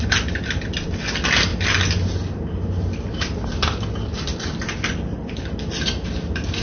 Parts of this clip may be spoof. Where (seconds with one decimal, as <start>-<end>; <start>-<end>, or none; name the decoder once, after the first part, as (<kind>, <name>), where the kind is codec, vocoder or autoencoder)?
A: none

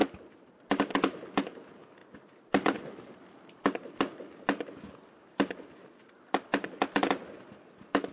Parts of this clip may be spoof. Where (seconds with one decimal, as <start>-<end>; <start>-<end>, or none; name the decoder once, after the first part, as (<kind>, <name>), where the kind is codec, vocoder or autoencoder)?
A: none